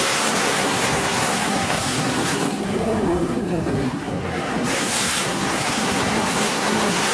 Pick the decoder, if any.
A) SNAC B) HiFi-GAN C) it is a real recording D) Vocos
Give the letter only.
A